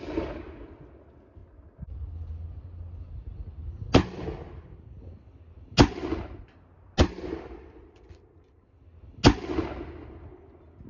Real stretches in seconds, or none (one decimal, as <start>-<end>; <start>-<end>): 0.0-10.9